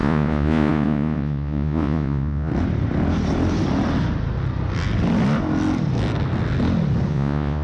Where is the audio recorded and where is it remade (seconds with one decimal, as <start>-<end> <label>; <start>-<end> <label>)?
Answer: 0.0-2.5 remade; 2.5-7.1 recorded; 7.1-7.6 remade